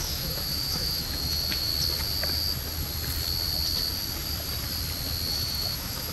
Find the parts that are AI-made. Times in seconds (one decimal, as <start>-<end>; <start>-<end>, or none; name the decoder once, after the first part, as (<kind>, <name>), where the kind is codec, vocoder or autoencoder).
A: 0.0-1.7 (autoencoder, DAC-VAE); 5.3-6.1